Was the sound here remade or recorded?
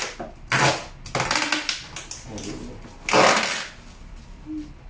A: recorded